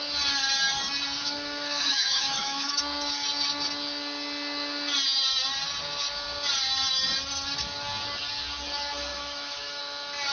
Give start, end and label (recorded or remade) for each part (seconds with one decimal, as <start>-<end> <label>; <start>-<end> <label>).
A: 0.0-1.2 recorded; 1.2-2.8 remade; 2.8-9.1 recorded; 9.1-9.8 remade; 9.8-10.3 recorded